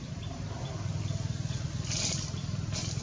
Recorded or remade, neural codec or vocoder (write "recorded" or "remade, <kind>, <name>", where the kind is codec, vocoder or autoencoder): recorded